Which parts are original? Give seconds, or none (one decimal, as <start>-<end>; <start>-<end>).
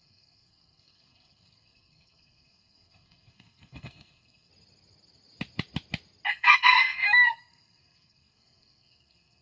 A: 4.5-6.3